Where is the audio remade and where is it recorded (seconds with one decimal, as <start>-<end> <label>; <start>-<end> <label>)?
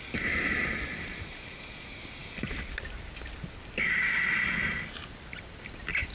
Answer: 0.0-6.1 recorded